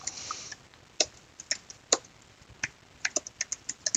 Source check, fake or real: real